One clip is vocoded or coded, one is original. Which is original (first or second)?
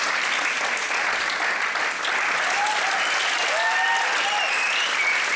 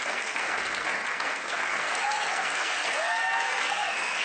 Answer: first